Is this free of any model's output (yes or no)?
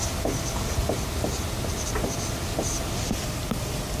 yes